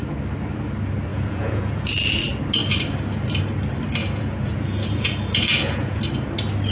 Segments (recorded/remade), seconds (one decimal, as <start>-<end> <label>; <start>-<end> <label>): 0.0-1.1 recorded; 1.1-1.9 remade; 1.9-4.0 recorded; 4.0-6.0 remade; 6.0-6.7 recorded